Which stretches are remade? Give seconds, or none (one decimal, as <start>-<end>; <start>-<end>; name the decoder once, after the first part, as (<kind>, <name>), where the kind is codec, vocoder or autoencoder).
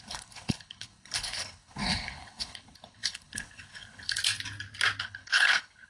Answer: 0.0-4.2 (codec, HILCodec); 5.0-5.9